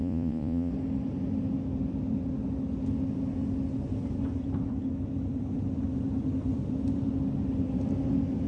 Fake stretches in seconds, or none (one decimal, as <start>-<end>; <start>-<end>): 0.0-0.7